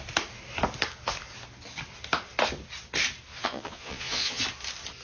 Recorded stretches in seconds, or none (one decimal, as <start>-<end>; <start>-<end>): 0.0-3.3; 4.4-5.0

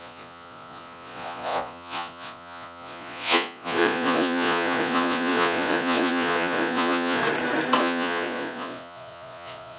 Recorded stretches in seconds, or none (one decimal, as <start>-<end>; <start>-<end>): 7.2-7.8

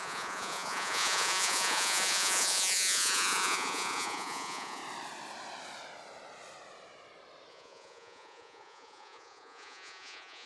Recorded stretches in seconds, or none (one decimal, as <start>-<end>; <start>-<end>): 4.8-7.5